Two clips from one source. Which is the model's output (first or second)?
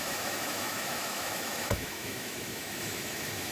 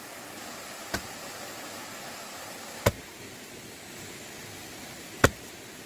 first